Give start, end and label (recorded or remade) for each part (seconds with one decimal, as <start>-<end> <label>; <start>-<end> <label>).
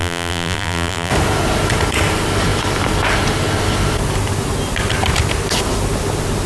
0.0-1.1 remade; 1.1-6.5 recorded